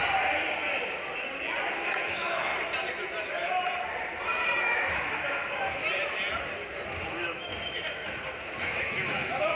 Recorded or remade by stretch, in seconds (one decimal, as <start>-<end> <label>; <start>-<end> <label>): 0.0-1.7 recorded; 1.7-2.5 remade; 2.5-4.6 recorded; 4.6-5.8 remade; 5.8-7.1 recorded; 7.1-7.5 remade; 7.5-8.6 recorded; 8.6-9.6 remade